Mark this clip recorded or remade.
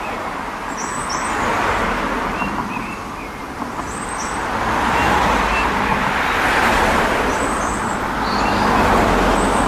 recorded